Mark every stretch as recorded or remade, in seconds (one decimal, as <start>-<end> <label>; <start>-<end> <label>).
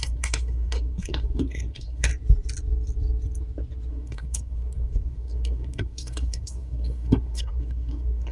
0.0-2.1 remade; 2.1-3.9 recorded; 3.9-8.3 remade